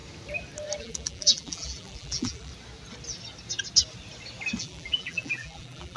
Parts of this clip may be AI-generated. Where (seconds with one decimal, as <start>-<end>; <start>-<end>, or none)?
0.8-2.5; 4.6-6.0